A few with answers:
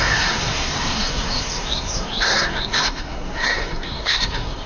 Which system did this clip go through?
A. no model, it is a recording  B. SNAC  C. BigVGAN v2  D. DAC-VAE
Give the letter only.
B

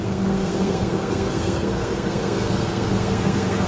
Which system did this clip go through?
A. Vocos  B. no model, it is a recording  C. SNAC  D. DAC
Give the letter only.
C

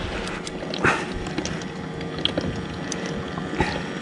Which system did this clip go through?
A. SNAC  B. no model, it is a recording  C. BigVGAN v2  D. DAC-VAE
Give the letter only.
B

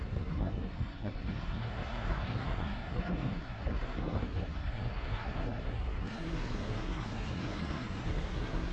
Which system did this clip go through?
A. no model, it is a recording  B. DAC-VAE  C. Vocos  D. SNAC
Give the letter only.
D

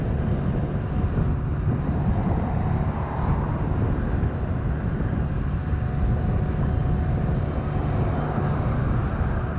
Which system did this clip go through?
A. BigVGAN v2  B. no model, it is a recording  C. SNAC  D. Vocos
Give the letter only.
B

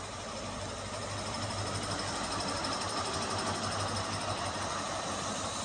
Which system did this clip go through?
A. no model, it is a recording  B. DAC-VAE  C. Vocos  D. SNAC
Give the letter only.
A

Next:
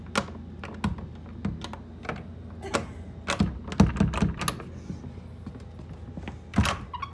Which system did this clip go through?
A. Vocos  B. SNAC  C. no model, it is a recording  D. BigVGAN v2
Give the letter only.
C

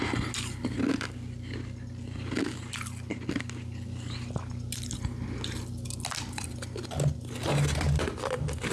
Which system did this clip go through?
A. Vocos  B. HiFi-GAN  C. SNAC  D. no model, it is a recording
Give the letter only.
D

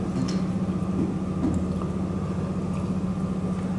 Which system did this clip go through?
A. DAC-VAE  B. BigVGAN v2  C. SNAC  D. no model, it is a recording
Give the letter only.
D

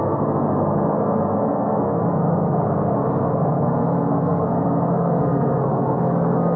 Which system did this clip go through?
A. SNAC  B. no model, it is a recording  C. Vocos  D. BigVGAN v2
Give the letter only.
A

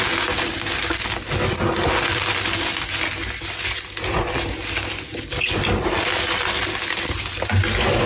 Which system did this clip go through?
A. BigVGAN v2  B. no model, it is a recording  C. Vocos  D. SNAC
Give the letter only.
B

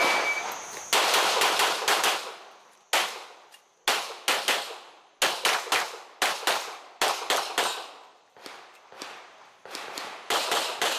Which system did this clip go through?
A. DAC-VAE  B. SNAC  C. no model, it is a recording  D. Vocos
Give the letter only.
C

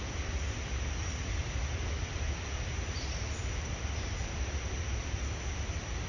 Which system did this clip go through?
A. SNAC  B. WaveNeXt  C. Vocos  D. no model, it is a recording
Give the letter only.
D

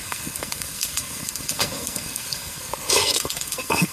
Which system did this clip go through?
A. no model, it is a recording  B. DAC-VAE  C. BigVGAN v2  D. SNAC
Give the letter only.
D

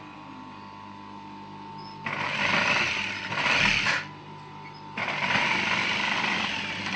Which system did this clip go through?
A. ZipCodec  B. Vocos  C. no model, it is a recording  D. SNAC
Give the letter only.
C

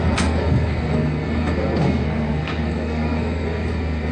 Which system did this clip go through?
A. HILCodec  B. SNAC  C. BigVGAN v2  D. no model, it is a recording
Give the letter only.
B